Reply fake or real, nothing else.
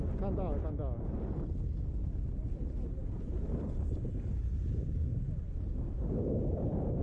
real